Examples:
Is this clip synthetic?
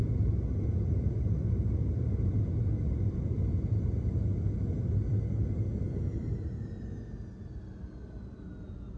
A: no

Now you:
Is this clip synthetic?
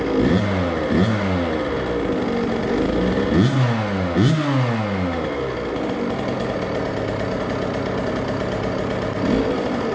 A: no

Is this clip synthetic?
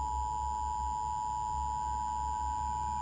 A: no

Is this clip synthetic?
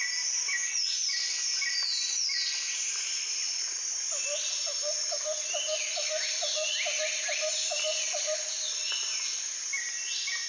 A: no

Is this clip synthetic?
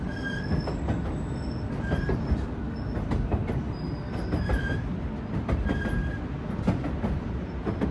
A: no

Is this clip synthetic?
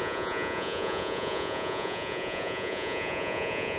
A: yes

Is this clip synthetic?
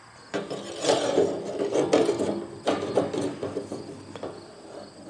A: no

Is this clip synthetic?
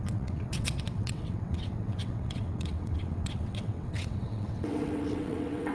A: yes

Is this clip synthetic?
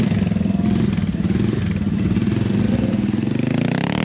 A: no